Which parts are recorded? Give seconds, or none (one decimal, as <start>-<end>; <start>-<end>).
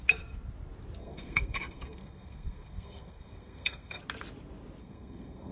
0.0-1.0; 4.0-4.8